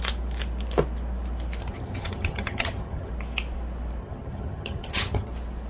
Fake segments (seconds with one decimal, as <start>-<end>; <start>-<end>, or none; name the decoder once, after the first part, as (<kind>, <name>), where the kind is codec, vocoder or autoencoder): 1.6-3.1 (vocoder, HiFi-GAN); 4.0-5.3